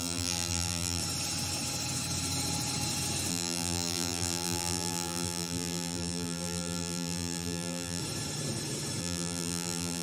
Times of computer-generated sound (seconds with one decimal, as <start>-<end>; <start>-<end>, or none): 0.0-1.0; 3.3-8.0; 9.0-10.0